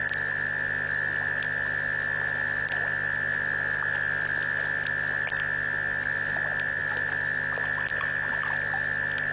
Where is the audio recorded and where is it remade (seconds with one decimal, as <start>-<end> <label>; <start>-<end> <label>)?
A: 0.0-9.3 recorded